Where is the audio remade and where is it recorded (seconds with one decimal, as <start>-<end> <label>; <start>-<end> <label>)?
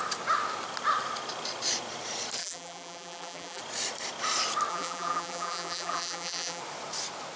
0.0-2.4 recorded; 2.4-3.6 remade; 3.6-4.7 recorded; 4.7-6.6 remade; 6.6-7.4 recorded